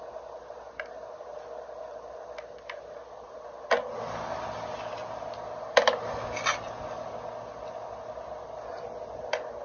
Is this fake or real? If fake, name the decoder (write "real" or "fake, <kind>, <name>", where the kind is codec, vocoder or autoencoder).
real